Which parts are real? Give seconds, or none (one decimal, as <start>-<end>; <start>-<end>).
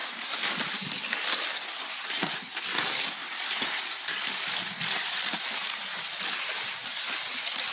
0.6-3.2; 6.2-7.7